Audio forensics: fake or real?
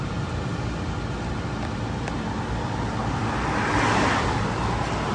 real